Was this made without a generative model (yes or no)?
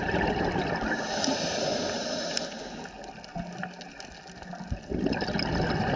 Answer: yes